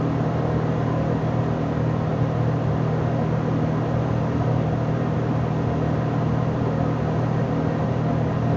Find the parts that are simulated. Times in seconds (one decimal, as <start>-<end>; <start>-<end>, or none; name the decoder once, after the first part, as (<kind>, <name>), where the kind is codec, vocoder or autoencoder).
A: none